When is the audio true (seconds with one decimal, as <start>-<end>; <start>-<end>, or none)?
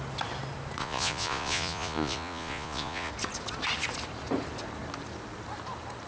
0.0-0.8; 3.1-6.1